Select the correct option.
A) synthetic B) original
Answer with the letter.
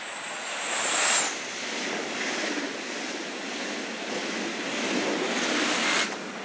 B